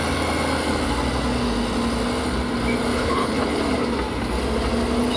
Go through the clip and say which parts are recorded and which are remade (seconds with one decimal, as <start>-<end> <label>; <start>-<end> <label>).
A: 0.0-2.9 recorded; 2.9-3.6 remade; 3.6-5.2 recorded